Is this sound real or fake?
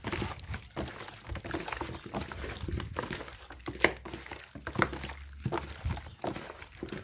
real